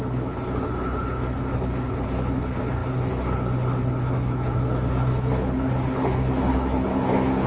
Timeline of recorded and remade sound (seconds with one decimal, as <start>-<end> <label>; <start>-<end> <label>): 0.0-7.5 remade